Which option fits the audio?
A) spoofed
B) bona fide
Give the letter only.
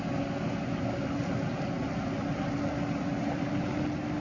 B